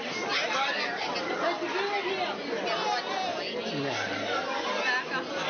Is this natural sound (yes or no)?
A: yes